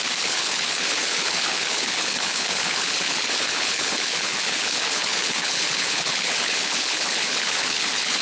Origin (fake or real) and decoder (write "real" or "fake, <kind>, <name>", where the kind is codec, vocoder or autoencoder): fake, codec, HILCodec